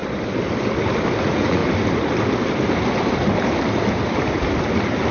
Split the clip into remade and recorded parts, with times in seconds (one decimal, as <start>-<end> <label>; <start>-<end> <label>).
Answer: 0.0-1.2 recorded; 1.2-1.6 remade; 1.6-5.1 recorded